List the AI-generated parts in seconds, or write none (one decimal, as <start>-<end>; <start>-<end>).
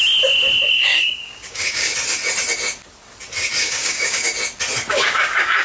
0.7-1.9; 3.6-4.3; 4.9-5.6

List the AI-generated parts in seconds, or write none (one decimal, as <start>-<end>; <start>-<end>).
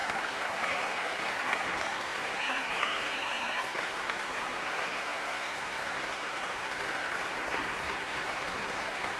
0.0-9.2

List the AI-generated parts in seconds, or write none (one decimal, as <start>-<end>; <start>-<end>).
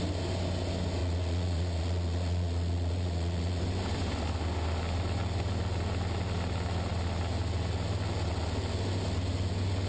1.0-3.6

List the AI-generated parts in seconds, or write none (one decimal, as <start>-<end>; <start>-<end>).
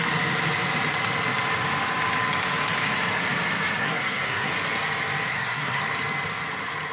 3.8-4.5; 5.3-5.8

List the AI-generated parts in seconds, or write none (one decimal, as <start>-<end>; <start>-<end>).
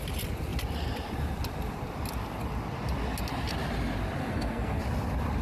4.2-4.8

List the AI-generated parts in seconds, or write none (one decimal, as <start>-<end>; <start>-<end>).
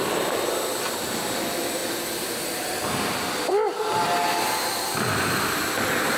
none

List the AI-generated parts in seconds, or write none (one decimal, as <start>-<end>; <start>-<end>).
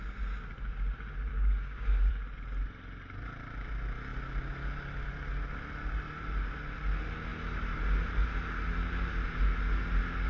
1.3-2.1